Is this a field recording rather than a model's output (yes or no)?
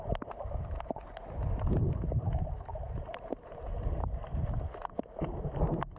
no